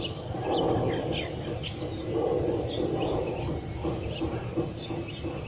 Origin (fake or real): real